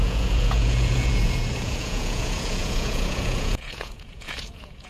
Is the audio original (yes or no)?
no